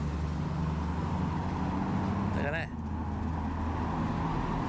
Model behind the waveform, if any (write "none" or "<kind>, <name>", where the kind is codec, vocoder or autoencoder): none